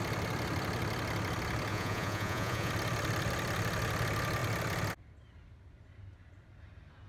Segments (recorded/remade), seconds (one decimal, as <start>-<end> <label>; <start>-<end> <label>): 0.0-1.7 recorded; 1.7-2.7 remade; 2.7-7.1 recorded